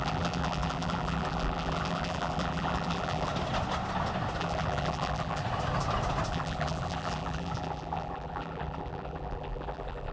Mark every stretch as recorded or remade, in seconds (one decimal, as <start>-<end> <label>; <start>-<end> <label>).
0.0-3.3 remade; 3.3-4.4 recorded; 4.4-5.4 remade; 5.4-6.3 recorded; 6.3-10.1 remade